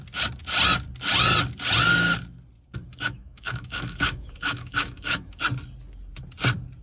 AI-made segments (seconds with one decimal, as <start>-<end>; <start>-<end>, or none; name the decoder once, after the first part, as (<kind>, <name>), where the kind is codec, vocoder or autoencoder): 2.9-5.4 (autoencoder, DAC-VAE)